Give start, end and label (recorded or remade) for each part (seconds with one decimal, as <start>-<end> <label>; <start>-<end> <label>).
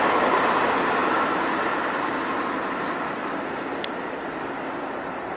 0.0-5.4 recorded